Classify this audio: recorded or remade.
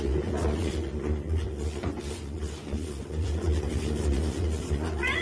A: remade